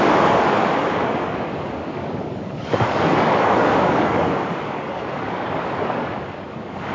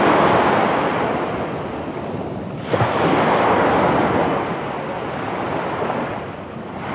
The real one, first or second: second